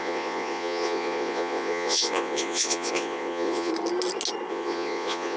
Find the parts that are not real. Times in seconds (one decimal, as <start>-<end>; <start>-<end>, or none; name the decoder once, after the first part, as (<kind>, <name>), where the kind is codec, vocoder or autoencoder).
0.0-3.7 (vocoder, Vocos); 4.5-5.4